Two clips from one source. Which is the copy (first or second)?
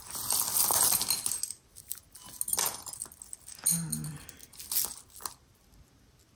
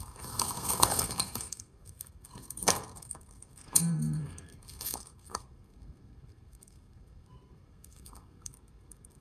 second